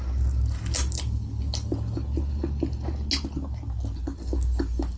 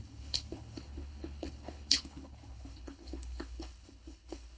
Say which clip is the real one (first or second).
first